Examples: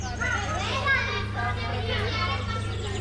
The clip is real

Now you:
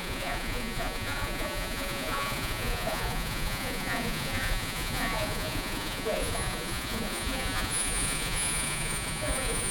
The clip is fake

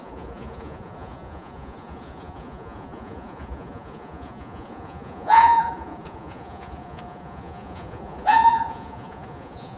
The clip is fake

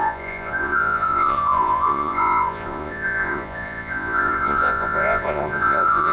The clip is fake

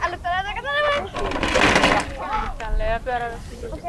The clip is real